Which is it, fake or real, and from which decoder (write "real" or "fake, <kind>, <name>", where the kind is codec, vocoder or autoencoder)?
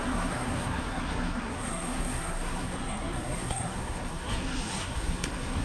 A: fake, codec, SNAC